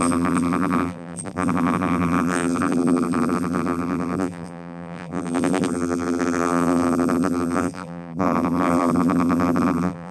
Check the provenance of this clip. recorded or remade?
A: remade